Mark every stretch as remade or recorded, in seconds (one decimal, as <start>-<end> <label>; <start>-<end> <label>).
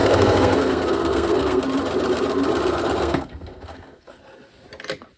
0.0-1.6 remade; 1.6-3.0 recorded; 3.0-4.2 remade; 4.2-5.2 recorded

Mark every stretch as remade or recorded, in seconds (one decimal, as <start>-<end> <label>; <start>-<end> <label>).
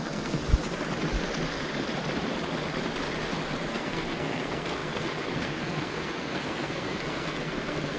0.0-0.4 remade; 0.4-3.7 recorded; 3.7-8.0 remade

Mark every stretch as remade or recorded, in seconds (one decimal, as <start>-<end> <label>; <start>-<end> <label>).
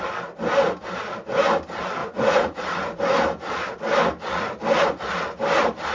0.0-2.0 recorded; 2.0-3.0 remade; 3.0-5.9 recorded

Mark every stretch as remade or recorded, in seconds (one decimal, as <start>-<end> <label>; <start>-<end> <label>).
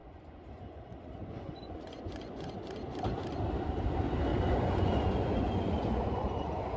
0.0-2.5 remade; 2.5-4.3 recorded; 4.3-6.8 remade